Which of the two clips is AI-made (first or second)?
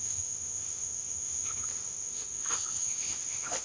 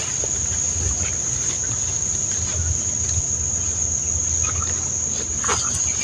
first